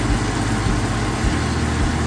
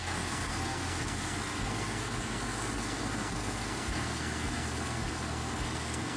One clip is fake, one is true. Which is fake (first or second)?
second